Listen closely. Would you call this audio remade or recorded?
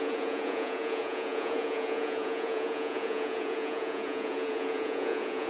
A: remade